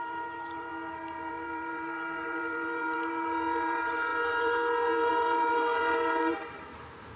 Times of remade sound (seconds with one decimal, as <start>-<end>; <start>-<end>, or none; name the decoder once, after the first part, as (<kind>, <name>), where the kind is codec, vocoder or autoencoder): 0.0-0.7 (vocoder, BigVGAN v2); 1.3-7.2